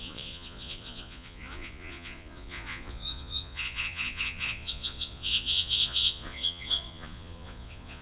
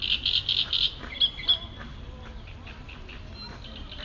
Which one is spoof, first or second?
first